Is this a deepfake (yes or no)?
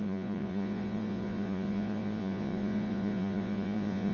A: yes